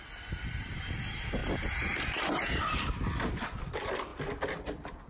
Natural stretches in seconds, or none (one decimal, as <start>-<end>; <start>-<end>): 1.4-3.6